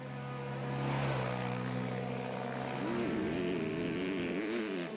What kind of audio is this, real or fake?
real